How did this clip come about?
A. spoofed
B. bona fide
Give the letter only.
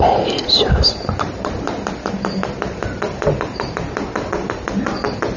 B